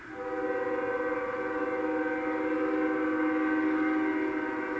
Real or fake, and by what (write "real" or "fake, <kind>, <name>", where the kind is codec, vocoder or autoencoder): real